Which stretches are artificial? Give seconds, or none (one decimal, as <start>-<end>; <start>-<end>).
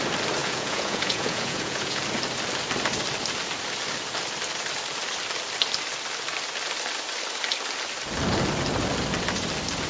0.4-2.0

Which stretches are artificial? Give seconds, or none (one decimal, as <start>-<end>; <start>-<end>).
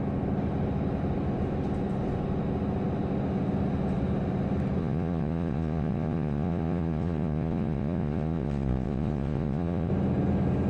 4.8-9.9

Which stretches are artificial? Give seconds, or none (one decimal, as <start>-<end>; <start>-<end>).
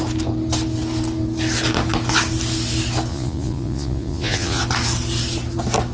3.1-4.6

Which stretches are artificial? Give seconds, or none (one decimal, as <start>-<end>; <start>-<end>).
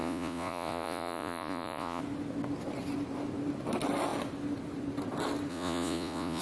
0.0-2.0; 5.5-6.4